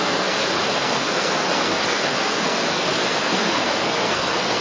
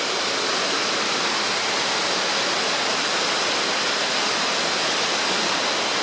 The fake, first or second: first